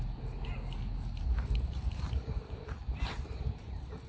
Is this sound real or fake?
real